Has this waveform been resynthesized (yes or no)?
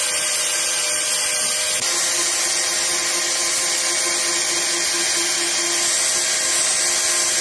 no